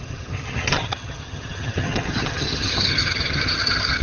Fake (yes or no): yes